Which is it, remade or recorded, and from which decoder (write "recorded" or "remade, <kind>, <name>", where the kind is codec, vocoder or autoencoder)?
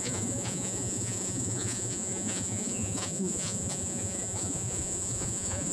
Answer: remade, vocoder, Vocos